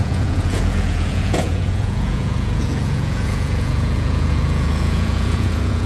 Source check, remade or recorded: remade